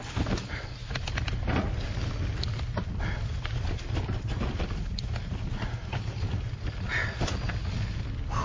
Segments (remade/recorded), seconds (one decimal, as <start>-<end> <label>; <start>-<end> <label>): 0.0-8.4 recorded